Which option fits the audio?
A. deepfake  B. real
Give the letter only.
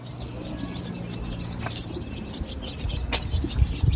B